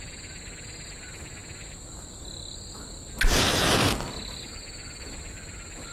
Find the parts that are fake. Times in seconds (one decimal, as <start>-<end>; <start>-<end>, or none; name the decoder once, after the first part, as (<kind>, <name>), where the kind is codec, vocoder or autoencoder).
none